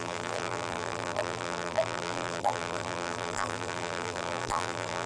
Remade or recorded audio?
remade